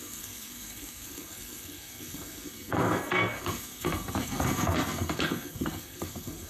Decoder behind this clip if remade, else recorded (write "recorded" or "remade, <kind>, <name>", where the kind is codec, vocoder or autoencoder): remade, codec, SNAC